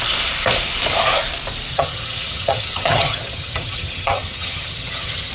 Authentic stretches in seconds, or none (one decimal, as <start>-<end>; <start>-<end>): 0.0-1.7